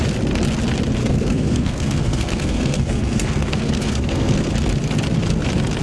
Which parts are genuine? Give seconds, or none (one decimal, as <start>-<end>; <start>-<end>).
0.0-1.0; 4.5-5.8